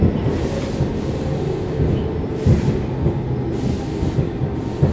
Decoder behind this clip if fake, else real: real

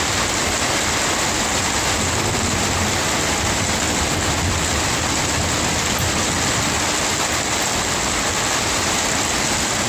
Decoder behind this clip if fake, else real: real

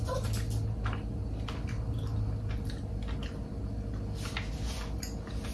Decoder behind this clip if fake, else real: real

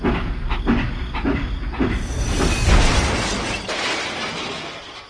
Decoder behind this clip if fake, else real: real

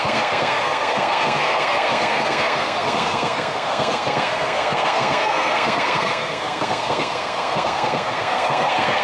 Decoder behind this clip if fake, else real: fake, codec, SNAC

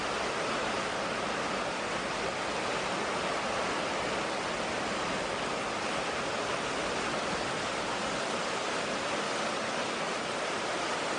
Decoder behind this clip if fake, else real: real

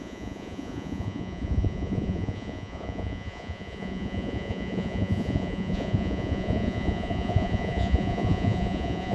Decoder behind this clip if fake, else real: fake, vocoder, Vocos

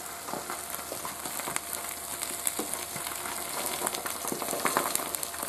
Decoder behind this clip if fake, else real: real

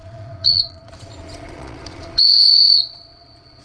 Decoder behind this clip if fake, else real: fake, vocoder, Vocos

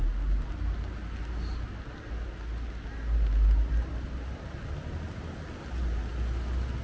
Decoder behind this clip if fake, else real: real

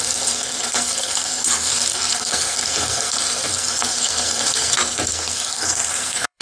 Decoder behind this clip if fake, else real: fake, codec, SNAC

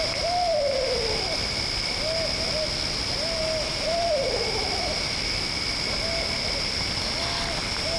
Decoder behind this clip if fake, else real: real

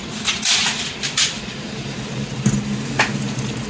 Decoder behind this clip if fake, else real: real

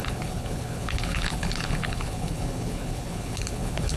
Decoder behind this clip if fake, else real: fake, codec, HILCodec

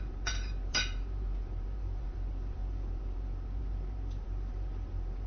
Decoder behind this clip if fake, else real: fake, vocoder, BigVGAN v2